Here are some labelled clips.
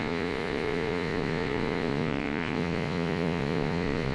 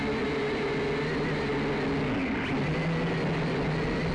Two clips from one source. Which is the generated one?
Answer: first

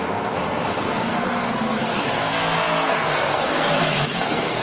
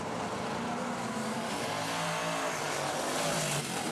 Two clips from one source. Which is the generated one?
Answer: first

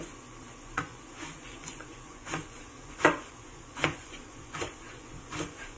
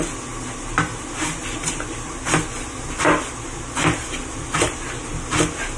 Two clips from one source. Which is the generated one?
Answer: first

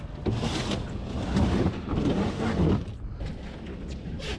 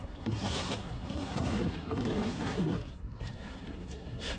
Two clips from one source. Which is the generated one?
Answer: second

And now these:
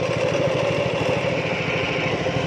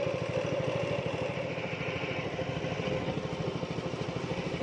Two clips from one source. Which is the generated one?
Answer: second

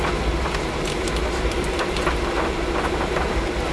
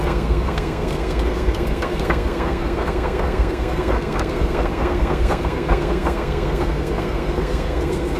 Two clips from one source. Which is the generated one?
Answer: second